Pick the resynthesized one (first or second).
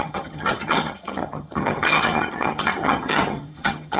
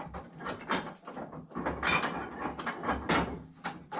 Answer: first